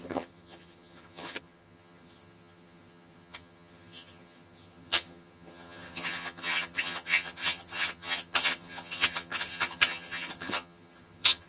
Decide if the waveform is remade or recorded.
remade